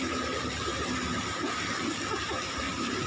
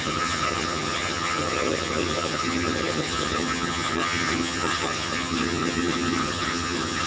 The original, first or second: first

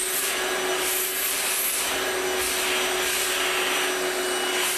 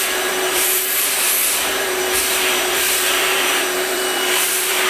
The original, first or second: first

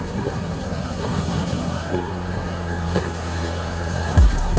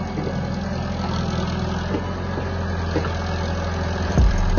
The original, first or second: second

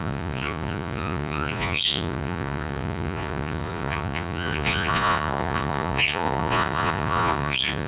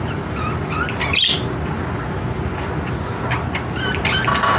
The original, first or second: second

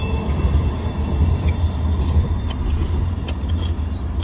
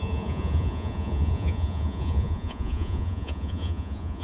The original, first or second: first